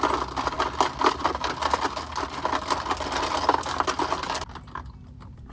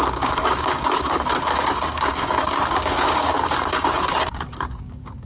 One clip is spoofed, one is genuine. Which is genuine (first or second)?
first